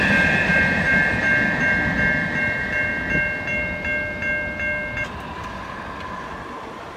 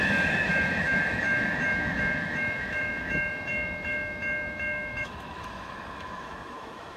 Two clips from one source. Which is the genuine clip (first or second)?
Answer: first